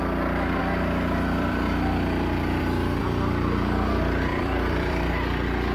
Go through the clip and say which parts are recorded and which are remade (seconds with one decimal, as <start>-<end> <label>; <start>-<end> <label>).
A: 0.0-0.6 recorded; 0.6-2.6 remade; 2.6-3.0 recorded; 3.0-3.9 remade; 3.9-4.3 recorded; 4.3-5.1 remade; 5.1-5.7 recorded